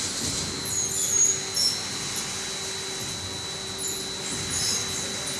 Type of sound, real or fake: real